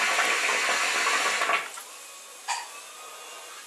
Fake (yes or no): no